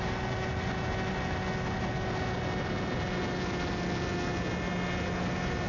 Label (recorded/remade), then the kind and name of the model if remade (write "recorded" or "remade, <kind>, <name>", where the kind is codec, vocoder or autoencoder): recorded